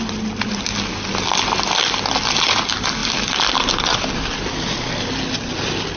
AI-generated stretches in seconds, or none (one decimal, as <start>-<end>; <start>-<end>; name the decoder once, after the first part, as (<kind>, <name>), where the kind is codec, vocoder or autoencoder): none